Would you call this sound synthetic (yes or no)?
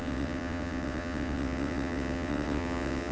yes